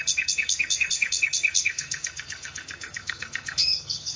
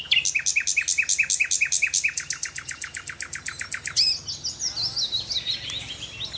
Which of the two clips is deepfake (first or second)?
first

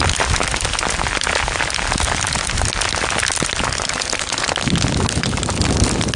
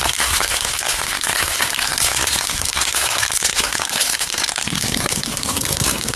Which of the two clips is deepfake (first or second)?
second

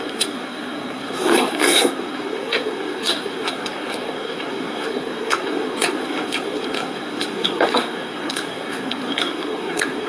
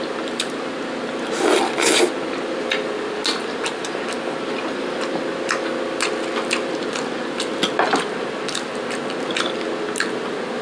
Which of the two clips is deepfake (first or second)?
first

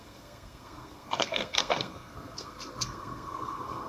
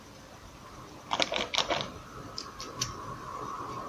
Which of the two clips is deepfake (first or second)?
first